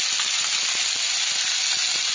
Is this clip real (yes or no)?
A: yes